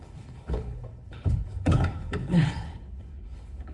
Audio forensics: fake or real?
fake